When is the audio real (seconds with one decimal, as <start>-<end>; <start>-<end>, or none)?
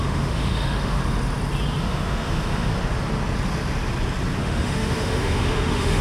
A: 1.0-1.8; 2.7-4.4